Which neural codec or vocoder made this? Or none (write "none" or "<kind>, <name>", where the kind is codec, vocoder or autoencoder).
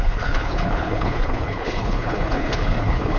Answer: codec, HILCodec